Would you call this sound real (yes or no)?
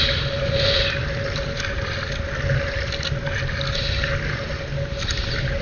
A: yes